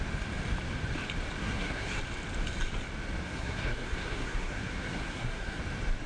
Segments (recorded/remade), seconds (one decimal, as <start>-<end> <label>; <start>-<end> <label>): 0.0-1.4 recorded; 1.4-2.0 remade; 2.0-3.2 recorded; 3.2-5.6 remade; 5.6-6.1 recorded